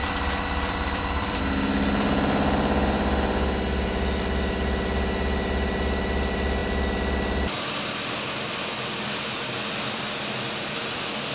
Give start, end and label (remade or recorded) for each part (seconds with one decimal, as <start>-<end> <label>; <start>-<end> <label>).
0.0-1.4 remade; 1.4-11.3 recorded